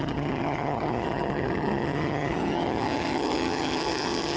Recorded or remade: remade